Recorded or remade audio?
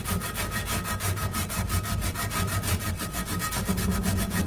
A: recorded